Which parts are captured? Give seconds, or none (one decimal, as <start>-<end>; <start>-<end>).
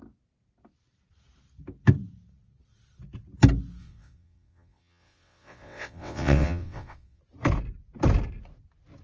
0.0-3.8; 7.2-9.0